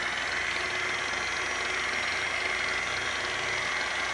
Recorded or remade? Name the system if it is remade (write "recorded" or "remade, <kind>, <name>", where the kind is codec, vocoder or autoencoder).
recorded